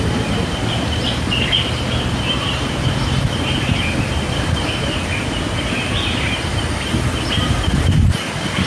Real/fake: real